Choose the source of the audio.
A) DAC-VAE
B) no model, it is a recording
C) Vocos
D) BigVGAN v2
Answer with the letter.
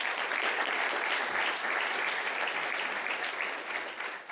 B